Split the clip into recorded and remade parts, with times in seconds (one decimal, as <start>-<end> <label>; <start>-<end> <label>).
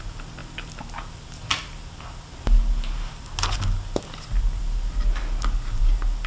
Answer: 0.0-6.3 recorded